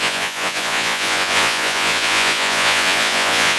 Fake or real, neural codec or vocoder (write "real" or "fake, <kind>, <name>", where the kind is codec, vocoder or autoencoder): fake, vocoder, Vocos